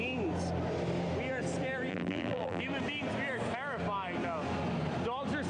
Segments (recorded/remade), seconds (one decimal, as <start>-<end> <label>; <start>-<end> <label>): 0.0-1.9 recorded; 1.9-2.6 remade; 2.6-5.5 recorded